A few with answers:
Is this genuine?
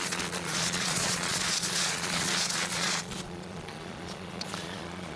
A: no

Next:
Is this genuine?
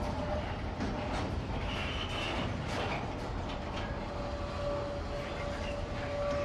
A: yes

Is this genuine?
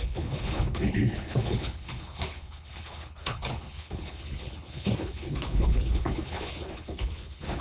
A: no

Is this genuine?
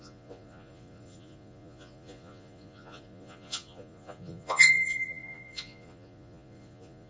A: no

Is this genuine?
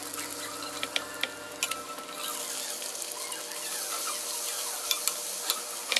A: yes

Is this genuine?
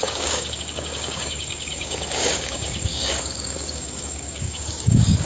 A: no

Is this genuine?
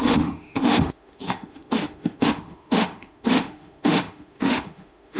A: no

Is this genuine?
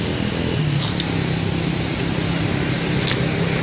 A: yes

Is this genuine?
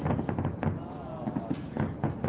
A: yes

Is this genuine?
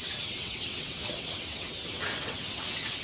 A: no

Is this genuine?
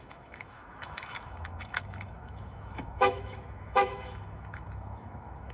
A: no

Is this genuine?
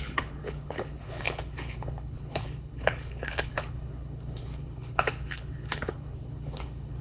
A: no